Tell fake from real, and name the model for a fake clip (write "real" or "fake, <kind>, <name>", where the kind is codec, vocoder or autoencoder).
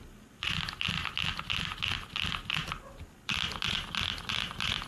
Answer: real